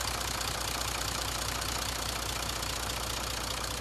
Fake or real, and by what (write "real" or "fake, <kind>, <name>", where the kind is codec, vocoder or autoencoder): fake, vocoder, BigVGAN v2